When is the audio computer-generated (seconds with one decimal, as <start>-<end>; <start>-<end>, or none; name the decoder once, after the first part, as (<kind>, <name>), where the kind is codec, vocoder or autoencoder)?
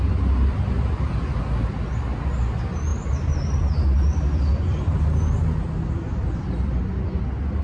2.9-3.7 (vocoder, BigVGAN v2); 4.5-6.8